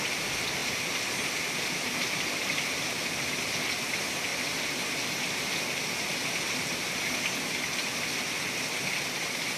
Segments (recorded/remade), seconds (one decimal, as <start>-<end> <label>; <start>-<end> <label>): 0.0-9.6 recorded